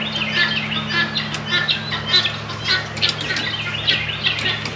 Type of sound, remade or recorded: recorded